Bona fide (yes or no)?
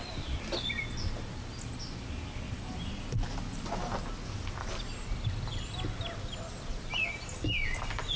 yes